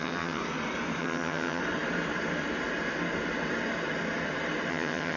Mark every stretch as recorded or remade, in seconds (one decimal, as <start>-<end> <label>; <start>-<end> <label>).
0.0-0.4 remade; 0.4-1.0 recorded; 1.0-1.6 remade; 1.6-4.7 recorded; 4.7-5.2 remade